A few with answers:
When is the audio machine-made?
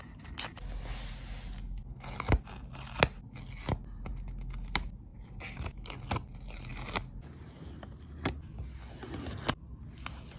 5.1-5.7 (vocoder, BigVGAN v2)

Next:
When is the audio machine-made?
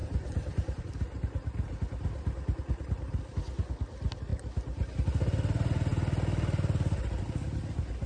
0.0-0.8 (vocoder, BigVGAN v2)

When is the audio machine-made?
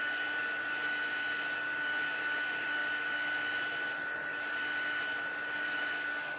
2.8-6.4 (vocoder, BigVGAN v2)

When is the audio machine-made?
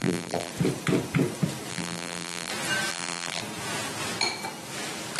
0.0-0.5 (vocoder, BigVGAN v2); 1.7-2.5; 2.9-3.4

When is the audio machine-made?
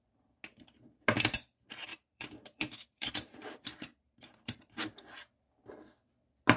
1.9-4.6 (vocoder, BigVGAN v2)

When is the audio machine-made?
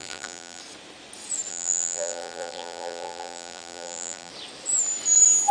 0.0-0.6 (vocoder, BigVGAN v2); 1.5-4.3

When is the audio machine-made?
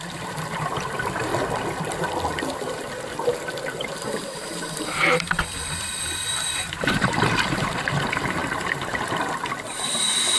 0.0-1.3 (vocoder, BigVGAN v2); 2.4-10.4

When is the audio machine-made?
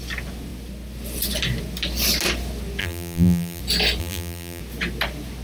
2.8-3.6 (vocoder, BigVGAN v2); 4.0-4.6